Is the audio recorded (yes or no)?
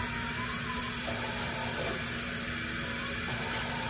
yes